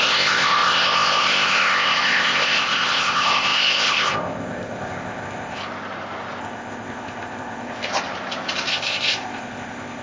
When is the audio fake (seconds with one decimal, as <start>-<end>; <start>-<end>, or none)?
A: 0.0-5.6; 6.4-7.9; 8.7-10.0

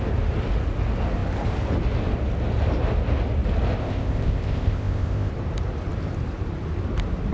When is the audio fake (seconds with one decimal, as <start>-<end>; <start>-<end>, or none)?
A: 3.8-5.3

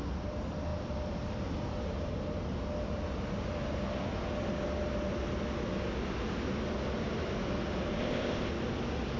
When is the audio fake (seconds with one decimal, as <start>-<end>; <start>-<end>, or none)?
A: 8.0-8.5

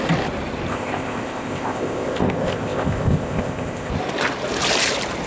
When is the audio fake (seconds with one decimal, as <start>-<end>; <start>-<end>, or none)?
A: 0.7-3.9

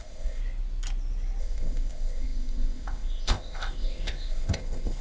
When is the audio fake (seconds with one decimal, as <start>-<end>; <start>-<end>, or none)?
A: 0.0-0.4; 1.4-5.0

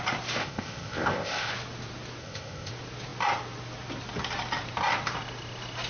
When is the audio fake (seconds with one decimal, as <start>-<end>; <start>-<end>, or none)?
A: 0.4-1.5; 2.2-2.7